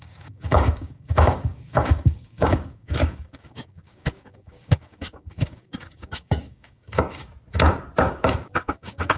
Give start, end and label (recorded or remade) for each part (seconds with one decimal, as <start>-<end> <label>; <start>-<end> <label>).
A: 0.0-7.3 remade; 7.3-8.0 recorded; 8.0-9.2 remade